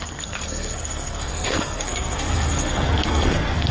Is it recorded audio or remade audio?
remade